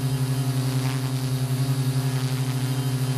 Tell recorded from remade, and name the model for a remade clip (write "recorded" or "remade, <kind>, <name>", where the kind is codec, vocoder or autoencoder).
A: recorded